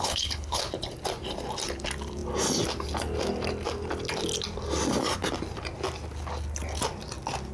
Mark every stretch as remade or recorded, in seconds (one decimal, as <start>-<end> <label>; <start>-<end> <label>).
0.0-0.6 remade; 0.6-7.5 recorded